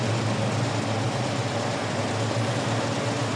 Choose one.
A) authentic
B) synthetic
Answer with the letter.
A